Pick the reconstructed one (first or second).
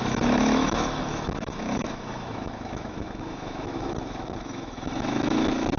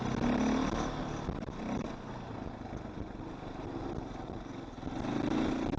first